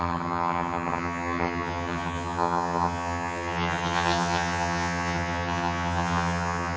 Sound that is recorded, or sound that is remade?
remade